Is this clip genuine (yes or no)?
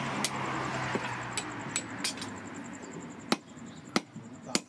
yes